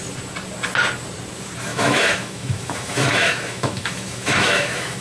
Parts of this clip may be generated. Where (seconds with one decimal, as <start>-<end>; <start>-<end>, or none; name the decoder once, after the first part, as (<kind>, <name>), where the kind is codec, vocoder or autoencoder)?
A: 1.7-5.0 (autoencoder, DAC-VAE)